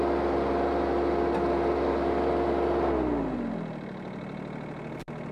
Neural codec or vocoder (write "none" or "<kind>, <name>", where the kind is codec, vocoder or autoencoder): none